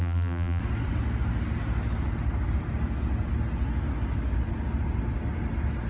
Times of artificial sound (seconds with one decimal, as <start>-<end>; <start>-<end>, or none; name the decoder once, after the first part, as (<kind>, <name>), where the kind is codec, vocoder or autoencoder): 0.0-0.6 (vocoder, BigVGAN v2)